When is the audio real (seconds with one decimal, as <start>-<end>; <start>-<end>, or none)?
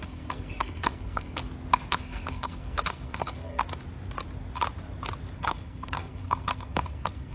1.4-2.0; 3.6-5.4